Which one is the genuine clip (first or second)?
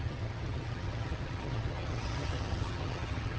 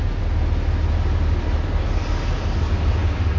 second